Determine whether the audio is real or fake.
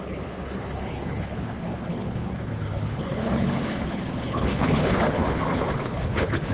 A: fake